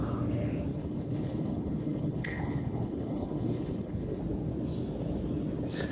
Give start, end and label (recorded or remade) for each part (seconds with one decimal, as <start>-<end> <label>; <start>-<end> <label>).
0.0-0.7 recorded; 0.7-4.2 remade; 4.2-5.9 recorded